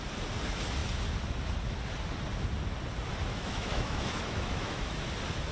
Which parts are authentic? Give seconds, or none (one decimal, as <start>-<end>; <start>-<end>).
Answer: 0.0-3.3; 5.0-5.5